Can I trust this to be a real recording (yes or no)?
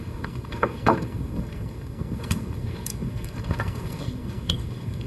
no